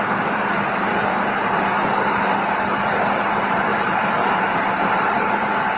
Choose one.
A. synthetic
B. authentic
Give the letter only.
A